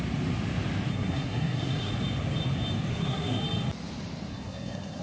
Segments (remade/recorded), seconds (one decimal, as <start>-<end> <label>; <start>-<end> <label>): 0.0-0.9 recorded; 0.9-1.9 remade; 1.9-2.9 recorded; 2.9-3.4 remade; 3.4-4.3 recorded; 4.3-5.0 remade